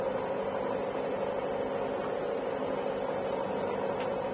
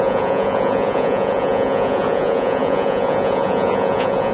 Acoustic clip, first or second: first